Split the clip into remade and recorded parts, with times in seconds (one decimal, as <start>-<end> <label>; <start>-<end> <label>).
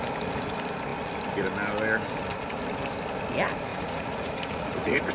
0.0-3.7 recorded; 3.7-5.1 remade